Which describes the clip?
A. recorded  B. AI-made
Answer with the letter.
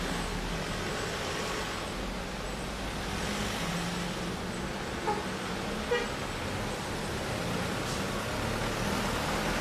A